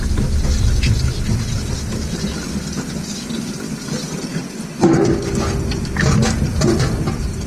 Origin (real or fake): real